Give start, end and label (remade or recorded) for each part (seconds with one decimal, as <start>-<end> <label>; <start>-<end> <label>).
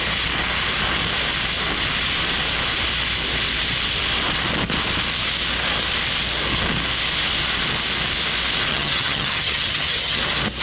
0.0-8.7 recorded; 8.7-10.2 remade; 10.2-10.6 recorded